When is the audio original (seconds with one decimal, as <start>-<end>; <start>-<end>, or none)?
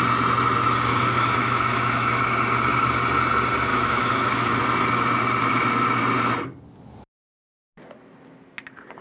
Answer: 0.0-0.9; 2.2-3.7; 4.6-9.0